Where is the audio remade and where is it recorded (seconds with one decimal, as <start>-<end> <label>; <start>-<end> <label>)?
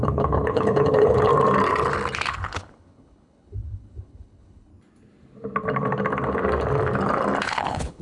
0.0-1.3 remade; 1.3-2.3 recorded; 2.3-4.7 remade; 4.7-7.4 recorded; 7.4-8.0 remade